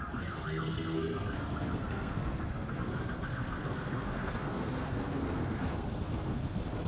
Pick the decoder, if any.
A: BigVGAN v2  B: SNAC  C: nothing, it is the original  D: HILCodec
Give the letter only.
B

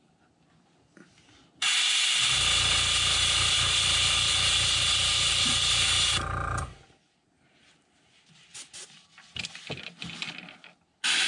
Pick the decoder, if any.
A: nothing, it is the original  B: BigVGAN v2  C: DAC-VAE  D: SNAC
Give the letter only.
A